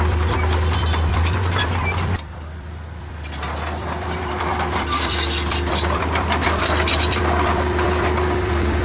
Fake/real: fake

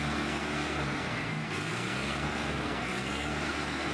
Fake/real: fake